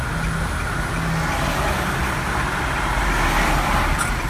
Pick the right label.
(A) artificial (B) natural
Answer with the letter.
B